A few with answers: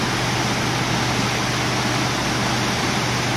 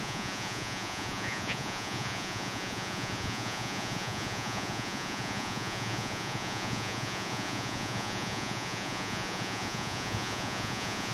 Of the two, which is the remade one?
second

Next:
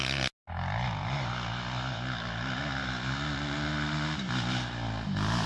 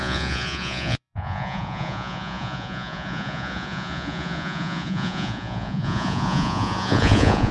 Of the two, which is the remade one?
second